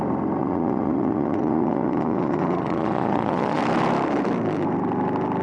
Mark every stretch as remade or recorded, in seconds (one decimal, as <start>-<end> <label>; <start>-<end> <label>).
0.0-0.4 recorded; 0.4-3.6 remade; 3.6-5.4 recorded